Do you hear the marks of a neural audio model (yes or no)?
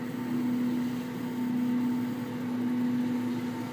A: no